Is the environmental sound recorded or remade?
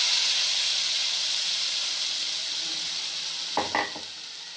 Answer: recorded